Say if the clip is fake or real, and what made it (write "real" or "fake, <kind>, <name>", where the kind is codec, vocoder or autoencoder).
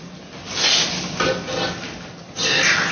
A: real